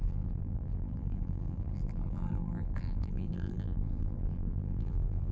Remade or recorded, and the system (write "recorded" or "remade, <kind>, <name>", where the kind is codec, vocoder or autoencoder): remade, vocoder, BigVGAN v2